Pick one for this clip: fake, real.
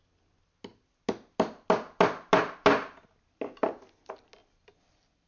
real